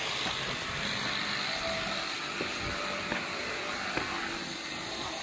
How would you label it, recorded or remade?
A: recorded